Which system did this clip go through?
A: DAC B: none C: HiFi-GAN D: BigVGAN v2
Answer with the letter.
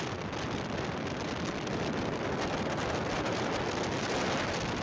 B